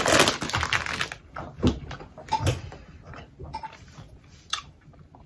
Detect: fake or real real